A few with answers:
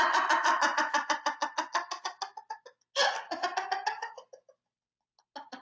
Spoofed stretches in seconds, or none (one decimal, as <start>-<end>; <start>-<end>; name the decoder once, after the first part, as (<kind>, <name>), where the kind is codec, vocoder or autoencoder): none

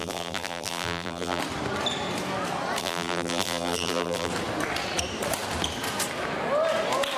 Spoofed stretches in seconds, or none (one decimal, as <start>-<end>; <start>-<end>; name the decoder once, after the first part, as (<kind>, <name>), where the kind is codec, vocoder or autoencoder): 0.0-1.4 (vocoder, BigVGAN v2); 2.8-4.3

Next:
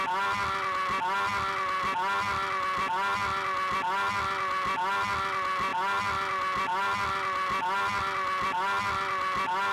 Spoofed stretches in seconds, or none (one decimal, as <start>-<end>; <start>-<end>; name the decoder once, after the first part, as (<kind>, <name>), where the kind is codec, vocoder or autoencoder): none

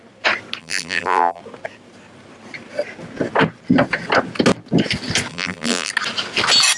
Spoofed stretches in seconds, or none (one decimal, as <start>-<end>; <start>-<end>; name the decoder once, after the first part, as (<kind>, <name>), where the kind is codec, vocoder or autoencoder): 0.6-1.4 (vocoder, BigVGAN v2); 5.3-5.9

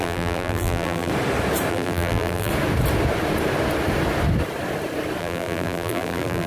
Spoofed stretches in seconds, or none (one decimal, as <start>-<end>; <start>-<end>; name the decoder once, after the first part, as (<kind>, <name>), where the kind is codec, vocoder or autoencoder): 0.0-1.1 (vocoder, BigVGAN v2); 1.7-2.5; 5.2-6.5